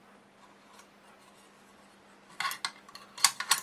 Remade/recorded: recorded